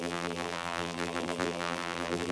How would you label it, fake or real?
fake